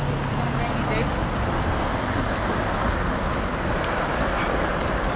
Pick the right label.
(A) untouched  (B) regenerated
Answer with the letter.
A